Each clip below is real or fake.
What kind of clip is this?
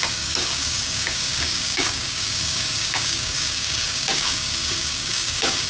fake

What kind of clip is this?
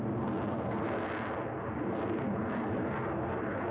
real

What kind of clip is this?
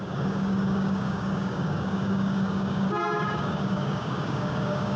fake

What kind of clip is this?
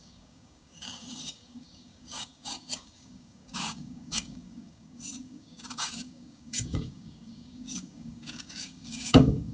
fake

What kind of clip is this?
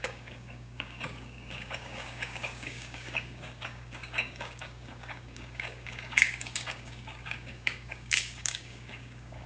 fake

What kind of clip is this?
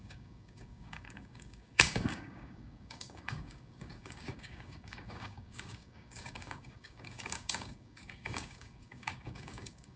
fake